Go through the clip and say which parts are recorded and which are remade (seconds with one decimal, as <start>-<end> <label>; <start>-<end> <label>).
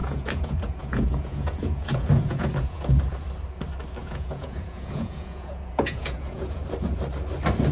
0.0-3.0 remade; 3.0-4.0 recorded; 4.0-6.6 remade; 6.6-7.7 recorded